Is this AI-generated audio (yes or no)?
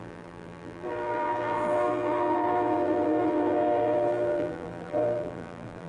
yes